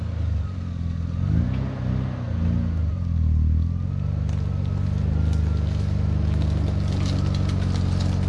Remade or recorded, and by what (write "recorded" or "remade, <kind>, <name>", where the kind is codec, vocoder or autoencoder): recorded